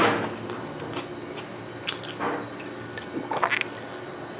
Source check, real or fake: real